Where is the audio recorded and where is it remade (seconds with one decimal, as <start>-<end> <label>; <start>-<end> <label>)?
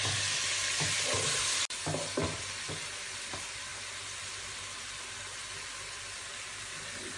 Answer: 0.0-7.2 recorded